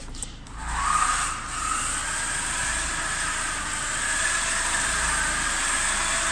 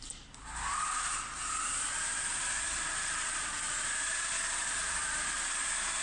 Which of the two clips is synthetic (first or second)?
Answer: second